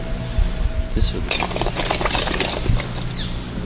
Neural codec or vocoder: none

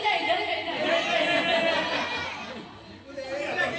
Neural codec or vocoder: none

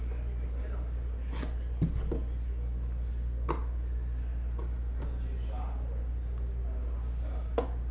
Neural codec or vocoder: none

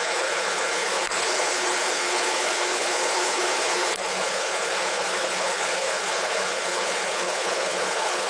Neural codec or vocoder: codec, HILCodec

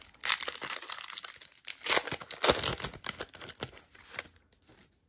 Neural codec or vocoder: none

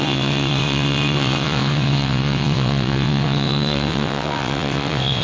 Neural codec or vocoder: vocoder, WaveNeXt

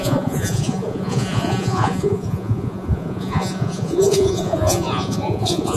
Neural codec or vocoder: vocoder, Vocos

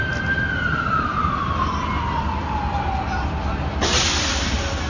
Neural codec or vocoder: none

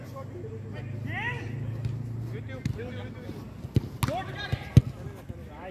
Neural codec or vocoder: none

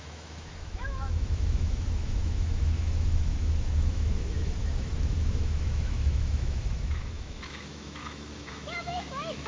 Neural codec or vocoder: autoencoder, DAC-VAE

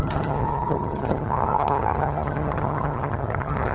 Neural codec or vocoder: vocoder, HiFi-GAN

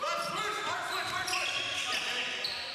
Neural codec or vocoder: none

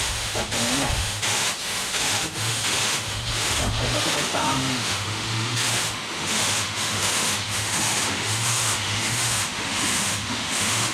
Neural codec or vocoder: autoencoder, DAC-VAE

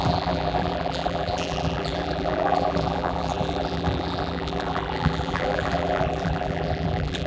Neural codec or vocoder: vocoder, BigVGAN v2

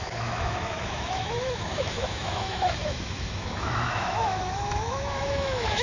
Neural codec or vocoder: autoencoder, DAC-VAE